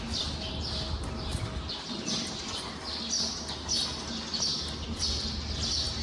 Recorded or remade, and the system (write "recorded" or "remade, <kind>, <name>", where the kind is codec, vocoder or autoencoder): recorded